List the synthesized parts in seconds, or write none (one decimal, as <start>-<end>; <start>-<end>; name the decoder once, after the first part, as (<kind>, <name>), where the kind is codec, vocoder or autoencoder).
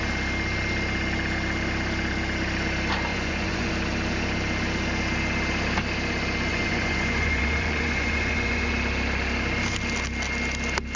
3.1-3.7 (vocoder, Vocos); 6.5-8.7